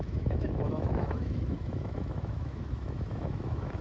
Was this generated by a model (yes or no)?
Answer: yes